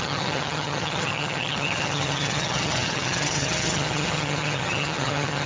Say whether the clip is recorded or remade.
remade